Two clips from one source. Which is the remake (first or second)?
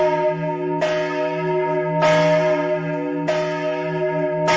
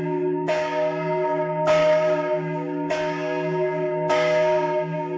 second